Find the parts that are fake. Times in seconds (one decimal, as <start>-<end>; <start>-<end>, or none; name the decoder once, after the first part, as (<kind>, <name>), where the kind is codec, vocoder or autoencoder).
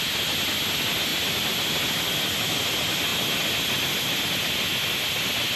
none